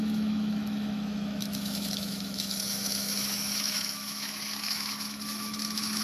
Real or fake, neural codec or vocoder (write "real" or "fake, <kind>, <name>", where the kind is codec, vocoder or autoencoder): fake, autoencoder, DAC-VAE